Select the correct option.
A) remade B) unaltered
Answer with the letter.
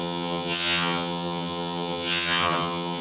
A